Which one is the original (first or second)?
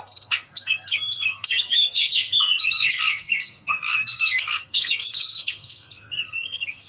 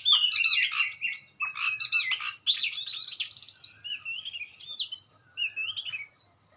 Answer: second